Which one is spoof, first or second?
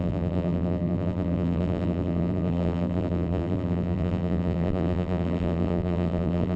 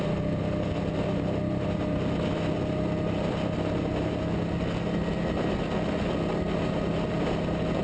first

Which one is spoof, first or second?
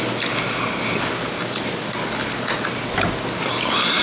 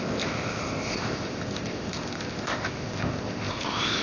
second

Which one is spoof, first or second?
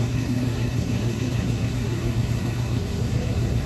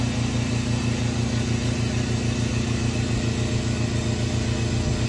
first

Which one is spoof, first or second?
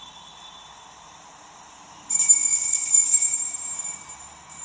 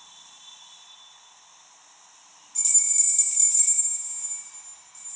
first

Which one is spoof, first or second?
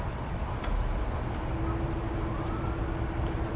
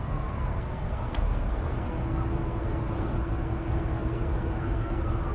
second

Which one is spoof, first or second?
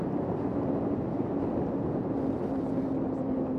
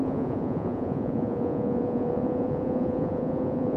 second